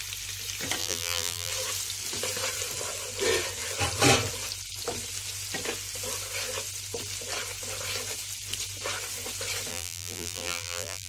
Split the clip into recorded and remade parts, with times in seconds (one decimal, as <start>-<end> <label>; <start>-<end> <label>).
0.0-0.8 recorded; 0.8-1.5 remade; 1.5-9.7 recorded; 9.7-11.1 remade

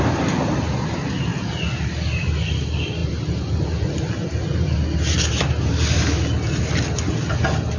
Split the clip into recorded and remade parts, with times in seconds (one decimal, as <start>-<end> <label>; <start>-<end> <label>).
0.0-7.8 recorded

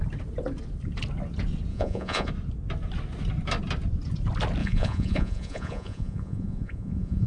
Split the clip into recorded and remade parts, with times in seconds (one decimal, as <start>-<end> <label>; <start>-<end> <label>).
0.0-1.7 recorded; 1.7-2.3 remade; 2.3-4.6 recorded; 4.6-7.3 remade

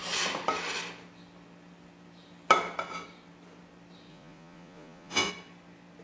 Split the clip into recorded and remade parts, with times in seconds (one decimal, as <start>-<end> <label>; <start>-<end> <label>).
0.0-4.1 recorded; 4.1-5.3 remade; 5.3-6.0 recorded

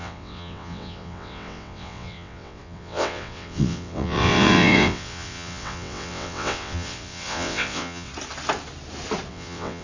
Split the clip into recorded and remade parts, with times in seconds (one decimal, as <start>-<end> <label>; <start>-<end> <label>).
0.0-8.1 remade; 8.1-9.3 recorded; 9.3-9.8 remade

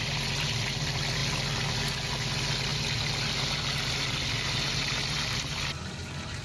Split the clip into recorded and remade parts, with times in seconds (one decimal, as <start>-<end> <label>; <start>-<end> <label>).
0.0-6.4 recorded